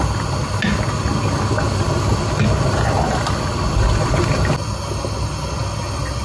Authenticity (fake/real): real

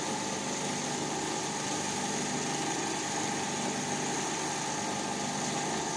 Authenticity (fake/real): real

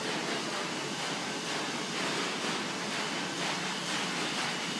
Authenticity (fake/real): real